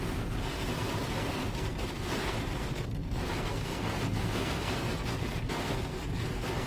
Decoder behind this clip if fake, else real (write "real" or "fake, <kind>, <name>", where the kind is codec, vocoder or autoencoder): fake, codec, SNAC